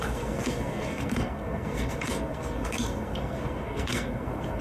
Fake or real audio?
fake